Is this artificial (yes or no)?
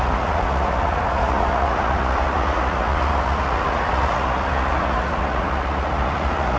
yes